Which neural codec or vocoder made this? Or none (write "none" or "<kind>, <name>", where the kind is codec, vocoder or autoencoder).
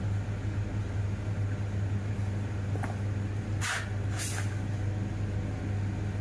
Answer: none